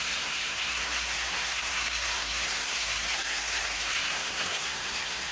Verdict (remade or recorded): remade